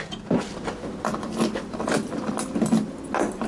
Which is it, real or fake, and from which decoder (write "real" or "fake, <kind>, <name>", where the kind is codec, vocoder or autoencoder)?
real